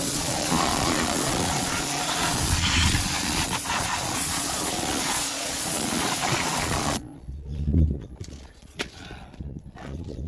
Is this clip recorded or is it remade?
remade